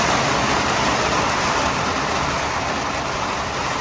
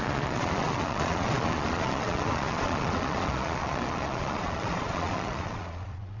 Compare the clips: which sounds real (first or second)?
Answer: first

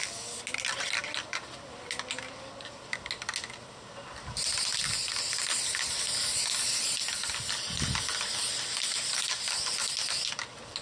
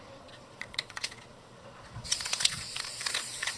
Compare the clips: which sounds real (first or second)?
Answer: first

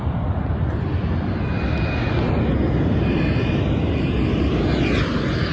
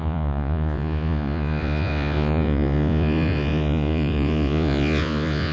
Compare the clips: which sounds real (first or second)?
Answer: first